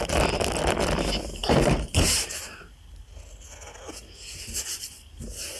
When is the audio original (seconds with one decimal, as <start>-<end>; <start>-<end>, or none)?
0.0-1.4; 2.6-5.6